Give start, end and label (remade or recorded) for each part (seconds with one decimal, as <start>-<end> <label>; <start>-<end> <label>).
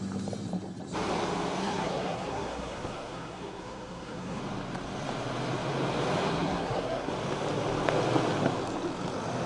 0.0-1.6 recorded; 1.6-4.4 remade; 4.4-6.3 recorded; 6.3-7.1 remade; 7.1-9.5 recorded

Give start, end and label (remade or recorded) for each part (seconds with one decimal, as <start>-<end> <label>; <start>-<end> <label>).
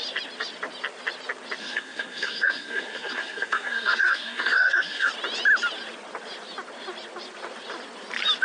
0.0-1.6 recorded; 1.6-5.1 remade; 5.1-8.4 recorded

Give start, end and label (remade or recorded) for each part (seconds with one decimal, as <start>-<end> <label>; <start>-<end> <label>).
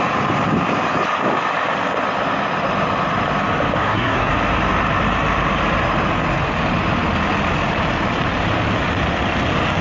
0.0-3.8 recorded; 3.8-4.3 remade; 4.3-9.8 recorded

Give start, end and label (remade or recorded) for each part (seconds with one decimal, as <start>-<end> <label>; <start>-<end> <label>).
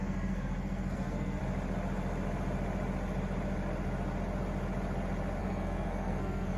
0.0-1.4 remade; 1.4-5.4 recorded; 5.4-6.6 remade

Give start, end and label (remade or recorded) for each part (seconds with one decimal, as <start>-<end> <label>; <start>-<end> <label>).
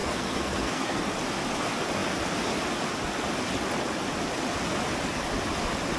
0.0-1.0 remade; 1.0-6.0 recorded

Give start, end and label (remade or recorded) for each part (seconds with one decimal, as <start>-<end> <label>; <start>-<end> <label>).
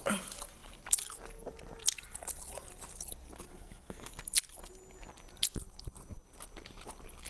0.0-3.5 recorded; 3.5-4.1 remade; 4.1-7.3 recorded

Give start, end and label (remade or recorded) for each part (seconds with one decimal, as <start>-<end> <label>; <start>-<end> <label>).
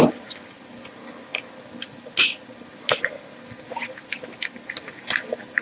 0.0-5.6 recorded